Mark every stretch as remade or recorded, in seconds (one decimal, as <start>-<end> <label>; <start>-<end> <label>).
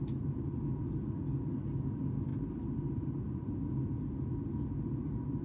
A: 0.0-5.4 recorded